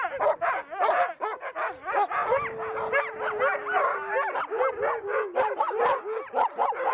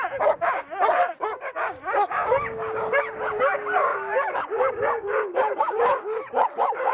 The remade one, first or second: second